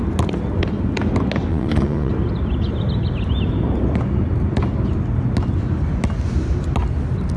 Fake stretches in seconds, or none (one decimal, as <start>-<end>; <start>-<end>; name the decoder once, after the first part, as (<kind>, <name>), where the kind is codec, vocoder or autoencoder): 1.5-2.1 (vocoder, Vocos)